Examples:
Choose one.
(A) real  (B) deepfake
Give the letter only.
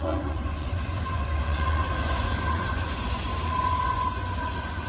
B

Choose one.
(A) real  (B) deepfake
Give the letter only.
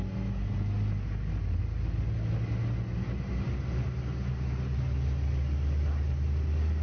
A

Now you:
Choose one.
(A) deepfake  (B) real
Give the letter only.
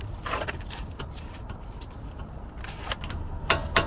B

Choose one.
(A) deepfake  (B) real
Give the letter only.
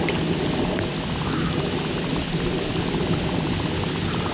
B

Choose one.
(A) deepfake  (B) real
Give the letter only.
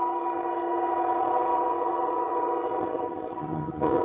A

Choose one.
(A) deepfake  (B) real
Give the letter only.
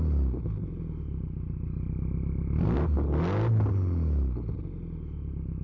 B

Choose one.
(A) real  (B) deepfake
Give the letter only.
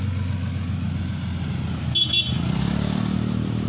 A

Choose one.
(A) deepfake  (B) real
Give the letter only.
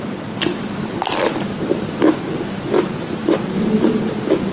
A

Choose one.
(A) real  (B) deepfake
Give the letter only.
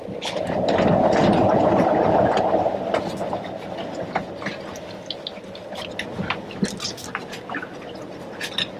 A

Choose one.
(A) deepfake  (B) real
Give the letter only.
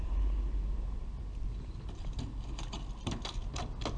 B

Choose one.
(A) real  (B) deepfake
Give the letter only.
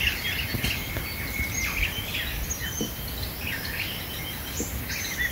A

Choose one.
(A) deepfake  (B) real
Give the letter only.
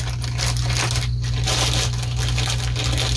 B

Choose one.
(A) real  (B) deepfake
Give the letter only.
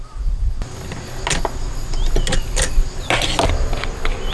A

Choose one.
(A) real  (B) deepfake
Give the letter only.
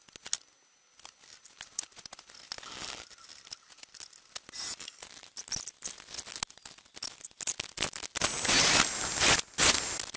A